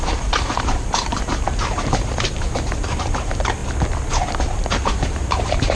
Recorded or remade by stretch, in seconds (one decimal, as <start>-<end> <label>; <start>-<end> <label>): 0.0-3.6 remade; 3.6-4.3 recorded; 4.3-5.7 remade